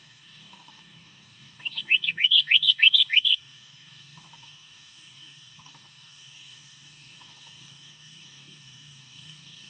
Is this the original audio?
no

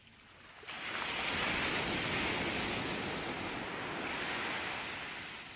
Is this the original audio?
yes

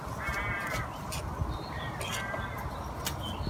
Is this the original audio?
yes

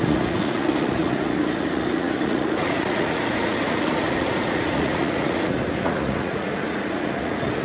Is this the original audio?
no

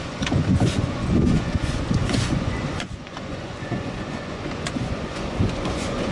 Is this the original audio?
no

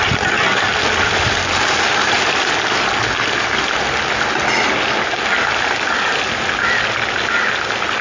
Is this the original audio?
yes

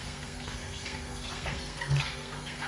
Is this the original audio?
no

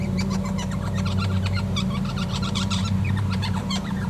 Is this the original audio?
no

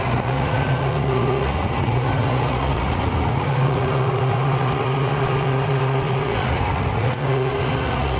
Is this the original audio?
no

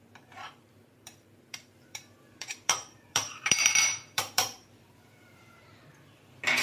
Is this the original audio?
no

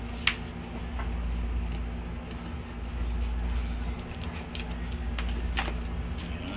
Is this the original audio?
yes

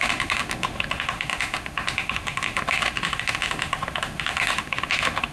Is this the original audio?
no